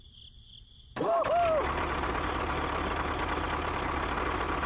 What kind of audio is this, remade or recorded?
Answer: recorded